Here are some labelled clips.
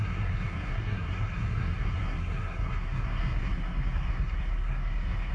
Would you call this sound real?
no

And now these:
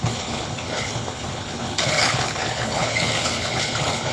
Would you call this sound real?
no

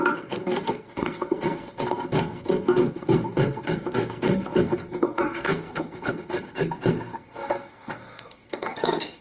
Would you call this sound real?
no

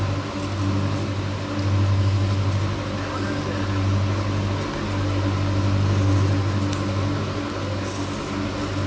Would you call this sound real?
yes